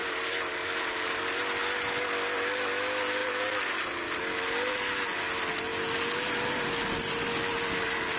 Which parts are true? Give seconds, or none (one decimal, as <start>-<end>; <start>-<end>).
1.4-8.2